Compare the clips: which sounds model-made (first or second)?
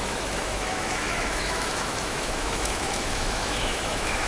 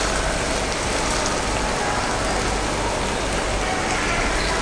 first